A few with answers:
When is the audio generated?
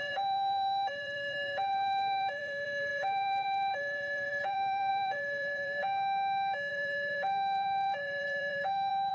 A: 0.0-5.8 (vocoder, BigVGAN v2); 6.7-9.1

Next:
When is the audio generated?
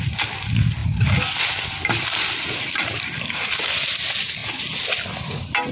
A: none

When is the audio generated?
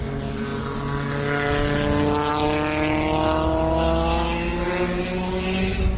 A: none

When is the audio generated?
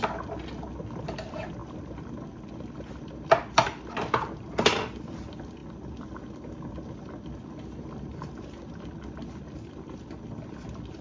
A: none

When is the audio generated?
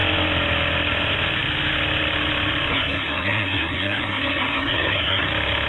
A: 2.7-5.3 (codec, SNAC)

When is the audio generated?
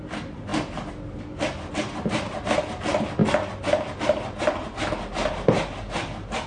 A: none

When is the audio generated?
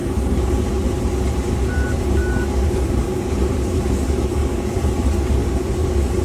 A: 2.2-6.2 (codec, DAC)